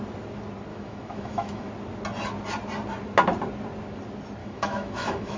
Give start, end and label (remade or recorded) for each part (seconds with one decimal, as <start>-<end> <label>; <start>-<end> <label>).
0.0-0.7 recorded; 0.7-1.7 remade; 1.7-4.4 recorded; 4.4-5.4 remade